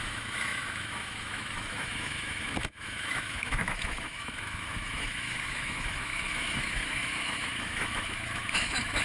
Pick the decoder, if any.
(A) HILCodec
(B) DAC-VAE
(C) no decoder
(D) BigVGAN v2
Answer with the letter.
B